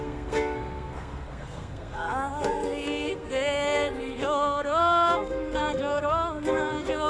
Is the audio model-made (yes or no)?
yes